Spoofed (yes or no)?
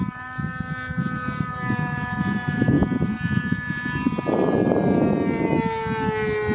no